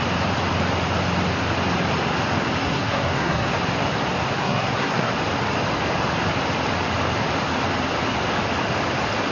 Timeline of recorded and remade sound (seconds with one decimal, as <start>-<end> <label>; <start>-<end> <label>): 0.0-2.6 recorded; 2.6-3.6 remade; 3.6-4.4 recorded; 4.4-5.1 remade; 5.1-9.3 recorded